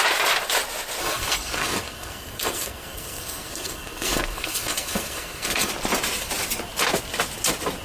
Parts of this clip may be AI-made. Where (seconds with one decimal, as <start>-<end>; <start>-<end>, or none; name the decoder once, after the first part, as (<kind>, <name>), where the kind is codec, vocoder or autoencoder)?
1.0-5.7 (codec, SNAC)